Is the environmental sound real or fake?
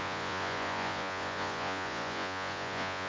fake